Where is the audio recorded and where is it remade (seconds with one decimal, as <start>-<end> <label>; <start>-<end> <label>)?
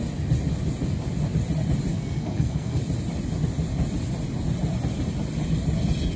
0.0-1.9 recorded; 1.9-2.8 remade; 2.8-6.2 recorded